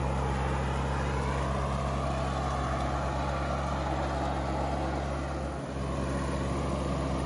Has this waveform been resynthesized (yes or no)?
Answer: no